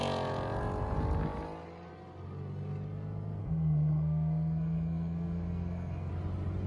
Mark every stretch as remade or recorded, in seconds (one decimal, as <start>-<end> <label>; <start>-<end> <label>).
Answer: 0.0-3.4 recorded; 3.4-6.1 remade; 6.1-6.7 recorded